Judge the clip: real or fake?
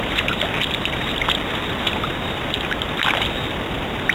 fake